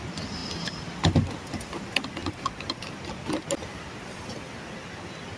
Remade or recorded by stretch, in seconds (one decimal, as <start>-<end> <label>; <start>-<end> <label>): 0.0-2.2 remade; 2.2-5.4 recorded